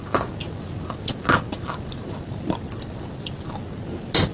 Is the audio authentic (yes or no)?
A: yes